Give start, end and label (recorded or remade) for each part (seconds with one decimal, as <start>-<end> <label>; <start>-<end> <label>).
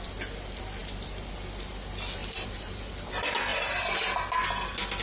0.0-2.2 recorded; 2.2-2.9 remade; 2.9-5.0 recorded